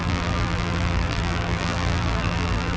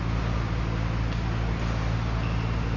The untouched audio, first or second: second